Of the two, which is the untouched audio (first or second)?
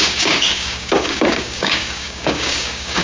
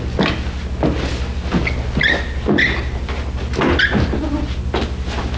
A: second